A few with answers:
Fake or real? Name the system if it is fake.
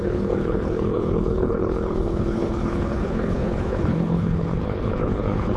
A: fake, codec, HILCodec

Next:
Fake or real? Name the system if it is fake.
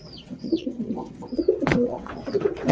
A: fake, vocoder, WaveNeXt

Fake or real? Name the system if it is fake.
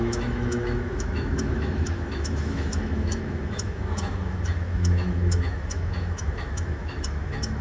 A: fake, autoencoder, DAC-VAE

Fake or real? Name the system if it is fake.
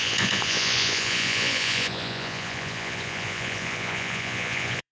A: fake, vocoder, Vocos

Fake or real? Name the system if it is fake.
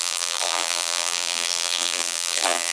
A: fake, vocoder, BigVGAN v2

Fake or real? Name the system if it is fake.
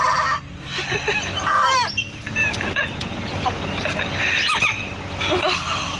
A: real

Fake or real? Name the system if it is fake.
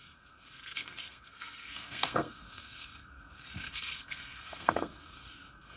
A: fake, codec, SNAC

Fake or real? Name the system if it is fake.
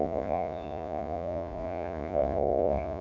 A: fake, vocoder, Vocos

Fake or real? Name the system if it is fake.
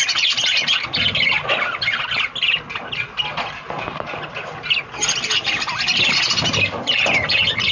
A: real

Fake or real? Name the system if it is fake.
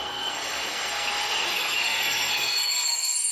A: fake, codec, SNAC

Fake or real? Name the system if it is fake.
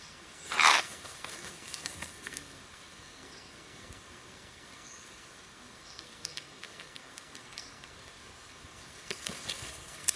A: fake, codec, SNAC